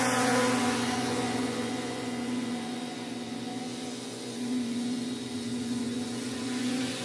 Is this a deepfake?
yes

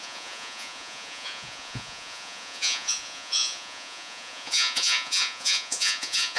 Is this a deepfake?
yes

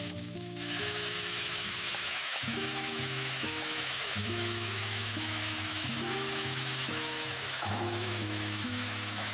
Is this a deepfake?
yes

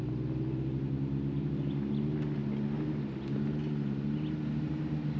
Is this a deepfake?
no